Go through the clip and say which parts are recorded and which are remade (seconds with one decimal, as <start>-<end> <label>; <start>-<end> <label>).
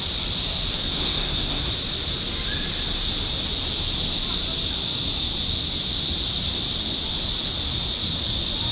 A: 0.0-0.8 recorded; 0.8-1.7 remade; 1.7-8.7 recorded